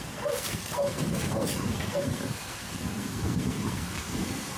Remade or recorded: remade